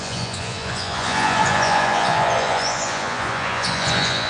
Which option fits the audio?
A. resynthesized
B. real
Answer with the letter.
A